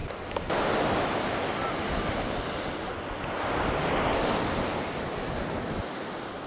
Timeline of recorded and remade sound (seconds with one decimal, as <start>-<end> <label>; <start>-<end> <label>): 0.0-6.5 recorded